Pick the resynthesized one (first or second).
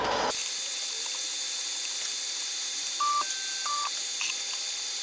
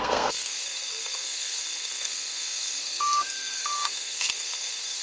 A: second